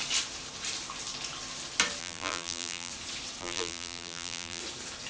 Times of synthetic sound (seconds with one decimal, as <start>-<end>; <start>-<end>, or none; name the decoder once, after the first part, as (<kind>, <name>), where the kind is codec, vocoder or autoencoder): 2.0-2.9 (vocoder, BigVGAN v2); 3.4-4.6